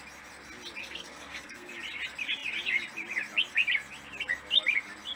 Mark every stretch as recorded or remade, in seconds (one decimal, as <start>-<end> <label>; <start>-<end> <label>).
0.0-0.8 recorded; 0.8-1.7 remade; 1.7-5.2 recorded